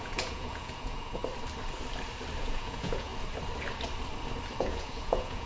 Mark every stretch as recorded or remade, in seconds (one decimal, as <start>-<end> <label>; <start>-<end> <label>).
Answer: 0.0-1.2 remade; 1.2-2.4 recorded; 2.4-3.1 remade; 3.1-4.6 recorded; 4.6-5.5 remade